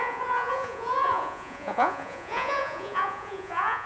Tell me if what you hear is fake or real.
fake